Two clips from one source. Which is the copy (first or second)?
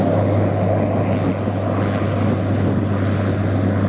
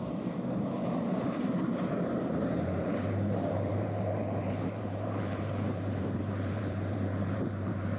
second